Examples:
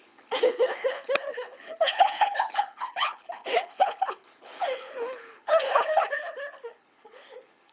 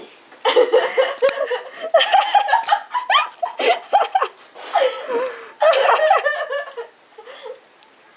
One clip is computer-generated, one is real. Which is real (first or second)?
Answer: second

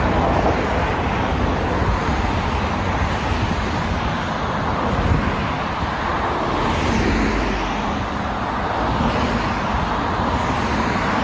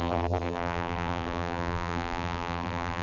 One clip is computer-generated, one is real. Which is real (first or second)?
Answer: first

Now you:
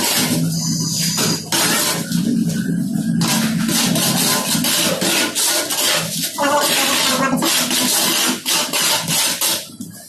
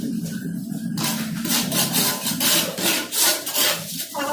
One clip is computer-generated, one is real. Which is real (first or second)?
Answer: first